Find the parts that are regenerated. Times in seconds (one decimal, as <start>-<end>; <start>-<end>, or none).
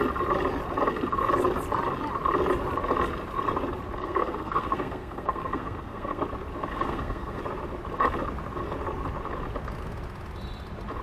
4.0-6.2; 6.7-7.4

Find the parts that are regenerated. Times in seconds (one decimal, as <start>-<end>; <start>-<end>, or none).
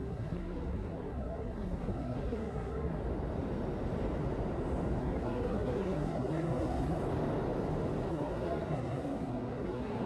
0.0-3.0; 5.0-7.0; 8.1-10.1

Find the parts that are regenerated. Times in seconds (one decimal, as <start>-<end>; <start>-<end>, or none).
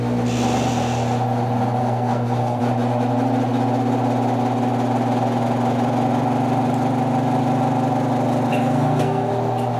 1.8-2.6; 8.5-9.3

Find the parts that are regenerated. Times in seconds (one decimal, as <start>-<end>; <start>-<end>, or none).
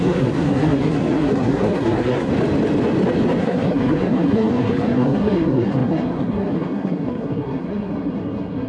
0.0-2.3; 3.4-8.7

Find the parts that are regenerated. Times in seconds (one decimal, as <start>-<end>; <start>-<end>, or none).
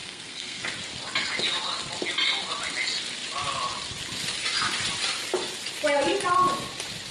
0.0-0.6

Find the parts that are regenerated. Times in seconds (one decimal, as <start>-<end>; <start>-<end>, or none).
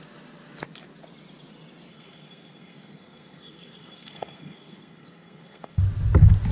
1.9-5.8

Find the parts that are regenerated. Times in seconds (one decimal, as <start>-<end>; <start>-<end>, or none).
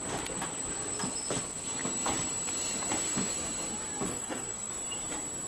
4.1-4.7